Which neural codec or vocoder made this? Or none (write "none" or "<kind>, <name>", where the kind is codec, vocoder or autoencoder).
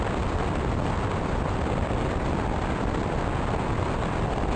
none